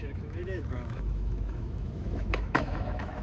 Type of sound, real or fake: fake